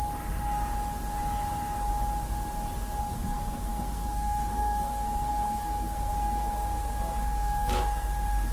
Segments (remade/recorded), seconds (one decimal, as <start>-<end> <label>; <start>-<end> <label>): 0.0-3.0 recorded; 3.0-8.5 remade